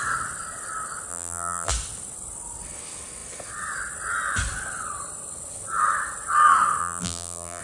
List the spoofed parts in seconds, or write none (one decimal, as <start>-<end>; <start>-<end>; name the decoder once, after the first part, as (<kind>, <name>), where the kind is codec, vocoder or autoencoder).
1.1-1.7 (vocoder, BigVGAN v2); 6.8-7.6